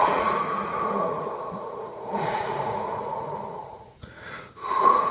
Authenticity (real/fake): fake